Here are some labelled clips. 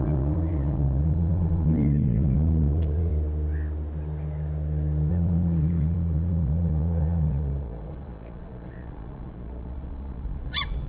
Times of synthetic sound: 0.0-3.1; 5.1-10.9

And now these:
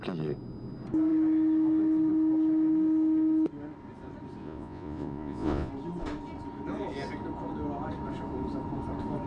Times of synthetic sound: 4.4-5.7

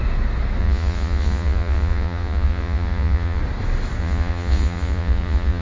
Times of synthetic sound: 0.6-3.4; 4.0-5.6

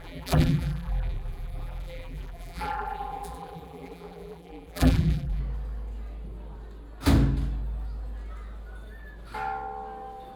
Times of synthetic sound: 0.0-5.4

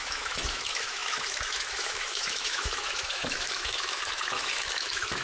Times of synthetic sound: 0.0-5.2